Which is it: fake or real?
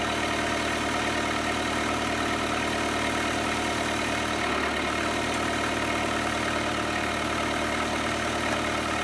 real